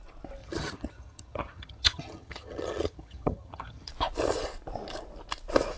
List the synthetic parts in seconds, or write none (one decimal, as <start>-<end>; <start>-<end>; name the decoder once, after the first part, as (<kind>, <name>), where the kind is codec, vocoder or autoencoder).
0.4-3.9 (vocoder, HiFi-GAN)

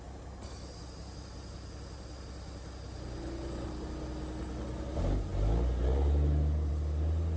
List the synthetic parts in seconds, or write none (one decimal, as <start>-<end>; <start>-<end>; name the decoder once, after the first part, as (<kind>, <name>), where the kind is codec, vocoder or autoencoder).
none

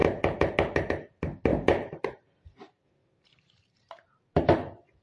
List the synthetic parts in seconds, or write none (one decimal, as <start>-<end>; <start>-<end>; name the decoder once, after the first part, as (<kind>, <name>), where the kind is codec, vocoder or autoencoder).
1.5-4.4 (vocoder, BigVGAN v2)

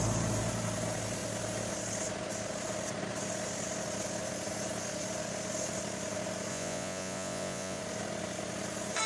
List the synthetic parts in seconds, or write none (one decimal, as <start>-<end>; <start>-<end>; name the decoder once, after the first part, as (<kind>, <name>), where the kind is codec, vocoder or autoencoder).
6.5-7.8 (vocoder, Vocos)

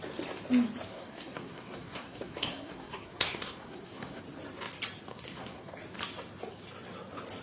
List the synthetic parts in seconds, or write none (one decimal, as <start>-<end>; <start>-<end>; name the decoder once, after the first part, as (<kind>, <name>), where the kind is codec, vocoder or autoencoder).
0.9-4.2 (codec, SNAC); 5.1-5.7

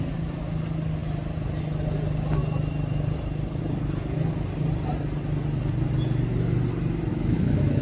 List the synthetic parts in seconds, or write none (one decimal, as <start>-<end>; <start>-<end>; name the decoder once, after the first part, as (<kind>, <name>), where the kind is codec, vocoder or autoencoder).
7.1-7.8 (autoencoder, DAC-VAE)

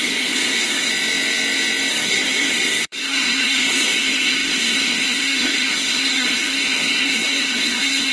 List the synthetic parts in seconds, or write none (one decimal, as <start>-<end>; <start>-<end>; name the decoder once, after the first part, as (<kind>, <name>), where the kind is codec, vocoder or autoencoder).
0.0-0.9 (codec, SNAC); 1.9-8.1

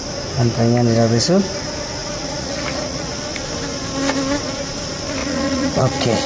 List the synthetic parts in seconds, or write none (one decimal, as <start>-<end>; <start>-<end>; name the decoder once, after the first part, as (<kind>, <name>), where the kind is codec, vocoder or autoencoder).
2.0-3.1 (vocoder, Vocos); 5.2-6.3